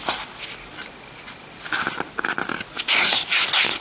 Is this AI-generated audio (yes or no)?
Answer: no